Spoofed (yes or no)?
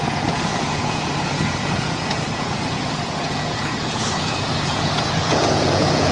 yes